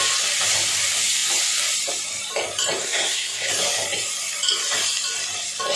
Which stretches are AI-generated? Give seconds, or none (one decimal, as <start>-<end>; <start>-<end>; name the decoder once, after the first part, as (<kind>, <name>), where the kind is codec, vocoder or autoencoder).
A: 2.8-3.5 (codec, SNAC)